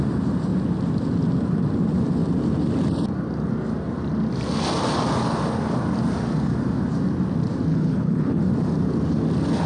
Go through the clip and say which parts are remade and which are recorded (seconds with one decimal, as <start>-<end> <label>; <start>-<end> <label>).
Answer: 0.0-7.7 recorded; 7.7-8.4 remade; 8.4-9.7 recorded